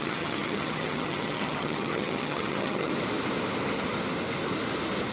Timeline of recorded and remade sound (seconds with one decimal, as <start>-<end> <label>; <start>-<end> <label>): 0.0-2.9 remade; 2.9-5.1 recorded